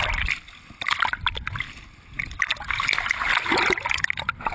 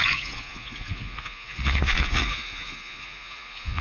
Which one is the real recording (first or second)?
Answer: first